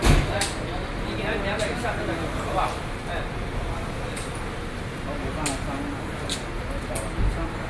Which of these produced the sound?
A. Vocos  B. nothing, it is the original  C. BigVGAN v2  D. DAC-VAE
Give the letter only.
B